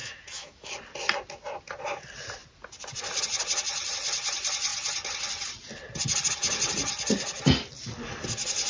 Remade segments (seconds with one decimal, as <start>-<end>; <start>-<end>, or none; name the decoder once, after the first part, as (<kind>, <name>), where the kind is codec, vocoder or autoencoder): 0.0-0.7 (autoencoder, DAC-VAE)